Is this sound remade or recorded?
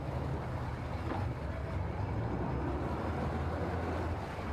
recorded